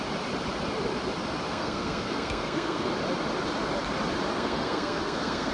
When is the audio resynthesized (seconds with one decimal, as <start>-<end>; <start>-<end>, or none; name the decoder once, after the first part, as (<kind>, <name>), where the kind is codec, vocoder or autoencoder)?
1.5-2.9 (codec, SNAC); 4.3-5.5